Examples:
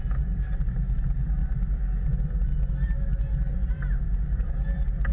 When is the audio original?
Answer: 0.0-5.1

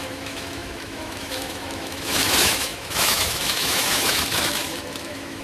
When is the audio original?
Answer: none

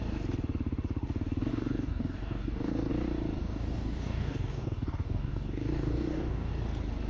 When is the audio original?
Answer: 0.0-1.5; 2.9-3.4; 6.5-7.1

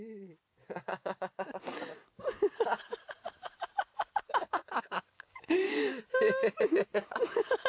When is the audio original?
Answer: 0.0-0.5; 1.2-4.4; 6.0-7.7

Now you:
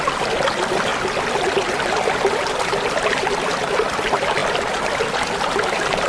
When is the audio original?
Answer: 0.0-6.1